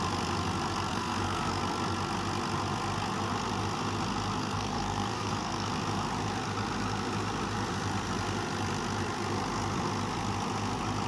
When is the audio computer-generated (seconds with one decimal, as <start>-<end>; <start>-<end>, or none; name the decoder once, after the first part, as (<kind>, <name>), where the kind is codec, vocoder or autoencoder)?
0.9-1.6 (codec, SNAC); 4.4-5.7

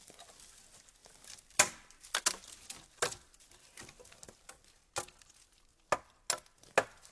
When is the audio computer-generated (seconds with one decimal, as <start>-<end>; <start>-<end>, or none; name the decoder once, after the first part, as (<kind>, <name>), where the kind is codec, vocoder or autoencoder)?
none

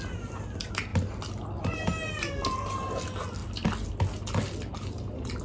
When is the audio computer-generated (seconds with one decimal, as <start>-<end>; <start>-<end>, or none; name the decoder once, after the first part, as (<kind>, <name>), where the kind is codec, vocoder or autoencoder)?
none

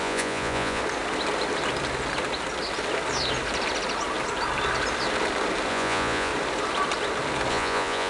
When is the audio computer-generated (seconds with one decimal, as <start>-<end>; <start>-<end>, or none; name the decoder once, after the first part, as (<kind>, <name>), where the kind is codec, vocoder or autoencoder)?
0.0-0.8 (vocoder, Vocos); 5.7-6.3; 7.5-8.1

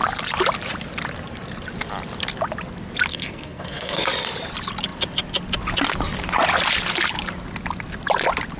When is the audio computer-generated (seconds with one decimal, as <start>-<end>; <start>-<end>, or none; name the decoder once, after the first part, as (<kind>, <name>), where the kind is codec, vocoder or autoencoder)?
3.1-4.1 (codec, SNAC)

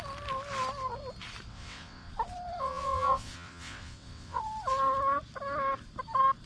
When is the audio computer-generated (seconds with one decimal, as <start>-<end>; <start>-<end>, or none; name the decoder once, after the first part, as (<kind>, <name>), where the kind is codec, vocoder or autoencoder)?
1.5-2.1 (vocoder, WaveNeXt); 2.6-4.4